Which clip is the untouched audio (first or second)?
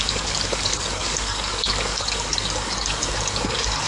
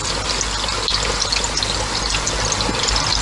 second